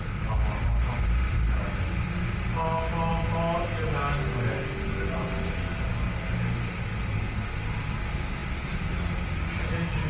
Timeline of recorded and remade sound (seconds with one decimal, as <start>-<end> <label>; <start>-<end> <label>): 0.0-10.1 recorded